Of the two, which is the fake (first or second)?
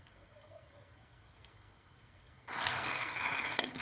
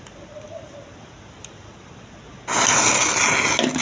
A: first